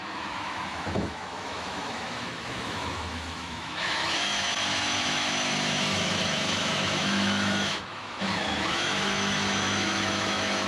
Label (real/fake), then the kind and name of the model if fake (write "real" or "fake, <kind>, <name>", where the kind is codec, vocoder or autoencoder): fake, autoencoder, DAC-VAE